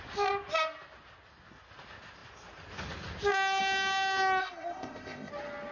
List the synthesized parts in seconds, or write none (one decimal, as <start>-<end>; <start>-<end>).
4.4-5.3